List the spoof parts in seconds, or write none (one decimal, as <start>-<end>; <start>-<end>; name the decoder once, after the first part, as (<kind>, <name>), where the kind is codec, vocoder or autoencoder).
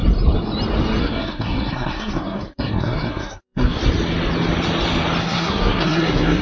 1.0-3.8 (codec, SNAC); 5.2-6.4